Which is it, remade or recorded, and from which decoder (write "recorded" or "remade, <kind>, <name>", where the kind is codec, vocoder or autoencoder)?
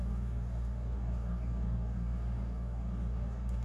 remade, codec, DAC